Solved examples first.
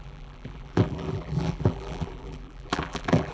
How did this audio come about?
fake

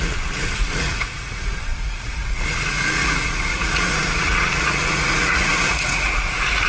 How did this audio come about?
fake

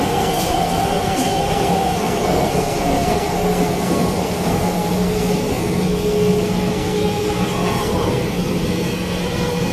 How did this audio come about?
fake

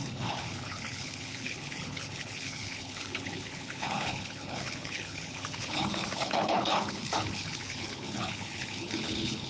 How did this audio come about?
fake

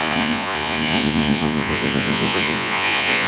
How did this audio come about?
fake